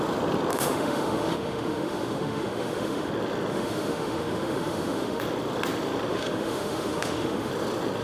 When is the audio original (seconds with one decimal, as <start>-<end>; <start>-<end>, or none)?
0.0-0.5; 3.1-3.5; 5.2-6.1; 7.5-8.0